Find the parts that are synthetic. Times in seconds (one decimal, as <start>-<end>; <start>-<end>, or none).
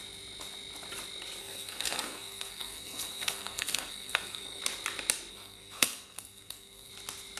1.4-4.6; 5.3-6.9